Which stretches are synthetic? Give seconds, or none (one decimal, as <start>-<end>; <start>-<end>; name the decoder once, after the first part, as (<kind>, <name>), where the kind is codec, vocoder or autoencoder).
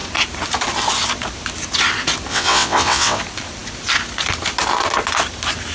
2.3-3.2 (vocoder, WaveNeXt)